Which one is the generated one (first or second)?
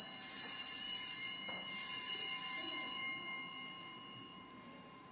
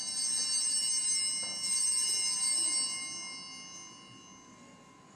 first